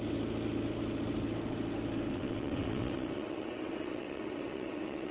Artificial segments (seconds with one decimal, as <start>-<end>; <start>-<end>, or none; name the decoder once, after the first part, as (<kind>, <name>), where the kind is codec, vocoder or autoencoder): 2.1-5.1 (vocoder, WaveNeXt)